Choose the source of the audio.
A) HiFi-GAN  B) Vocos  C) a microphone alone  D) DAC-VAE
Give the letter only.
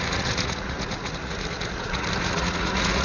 B